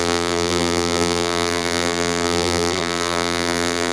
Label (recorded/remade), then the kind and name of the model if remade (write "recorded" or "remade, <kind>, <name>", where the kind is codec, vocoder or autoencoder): remade, vocoder, BigVGAN v2